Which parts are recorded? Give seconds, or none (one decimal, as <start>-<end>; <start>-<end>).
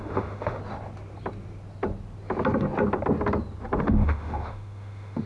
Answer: 0.6-3.8